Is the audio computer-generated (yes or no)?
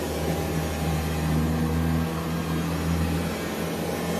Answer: no